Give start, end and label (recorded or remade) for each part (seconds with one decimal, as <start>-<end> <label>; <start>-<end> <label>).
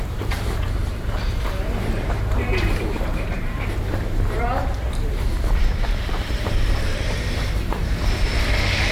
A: 0.0-8.9 remade